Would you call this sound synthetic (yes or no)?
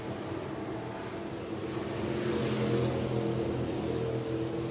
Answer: no